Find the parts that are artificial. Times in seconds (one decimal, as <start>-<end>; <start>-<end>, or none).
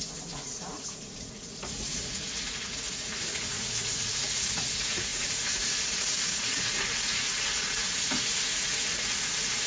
0.0-9.7